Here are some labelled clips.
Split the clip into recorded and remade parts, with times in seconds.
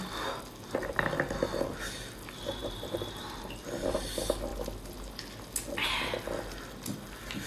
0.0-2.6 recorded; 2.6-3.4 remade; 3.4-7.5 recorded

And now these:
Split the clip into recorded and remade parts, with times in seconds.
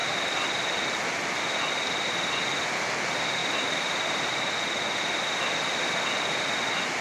0.0-3.4 recorded; 3.4-4.5 remade; 4.5-7.0 recorded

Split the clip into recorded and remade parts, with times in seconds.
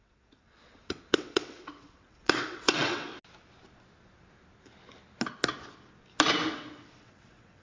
0.0-3.1 remade; 3.1-6.5 recorded; 6.5-7.6 remade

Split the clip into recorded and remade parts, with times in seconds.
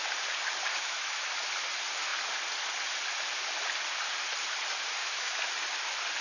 0.0-0.7 recorded; 0.7-1.3 remade; 1.3-5.0 recorded; 5.0-5.5 remade; 5.5-6.2 recorded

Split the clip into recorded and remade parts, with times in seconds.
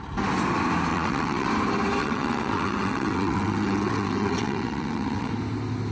0.0-0.9 recorded; 0.9-1.5 remade; 1.5-2.0 recorded; 2.0-5.3 remade; 5.3-5.9 recorded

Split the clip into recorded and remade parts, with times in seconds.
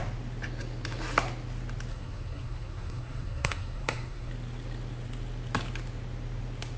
0.0-1.9 recorded; 1.9-4.3 remade; 4.3-6.8 recorded